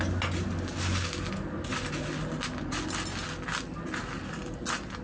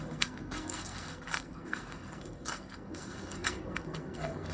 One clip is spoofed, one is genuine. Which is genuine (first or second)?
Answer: first